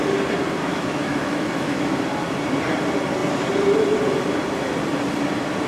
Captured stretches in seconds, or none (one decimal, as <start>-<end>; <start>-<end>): 0.0-0.6; 2.0-5.7